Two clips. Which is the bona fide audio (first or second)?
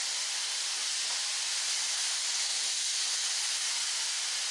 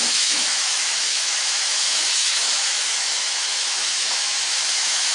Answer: first